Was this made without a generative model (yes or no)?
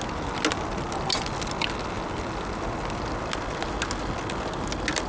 yes